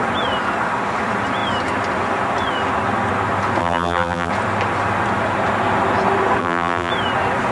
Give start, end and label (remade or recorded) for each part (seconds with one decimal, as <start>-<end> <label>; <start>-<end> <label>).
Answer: 0.0-3.6 recorded; 3.6-4.3 remade; 4.3-6.4 recorded; 6.4-6.9 remade; 6.9-7.5 recorded